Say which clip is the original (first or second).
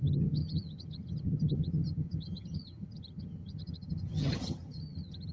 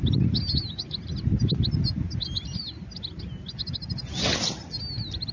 second